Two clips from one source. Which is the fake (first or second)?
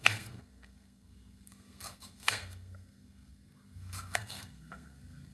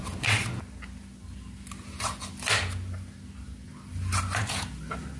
first